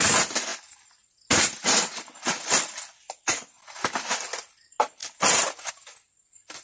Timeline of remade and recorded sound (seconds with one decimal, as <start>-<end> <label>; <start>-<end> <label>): 0.0-6.6 recorded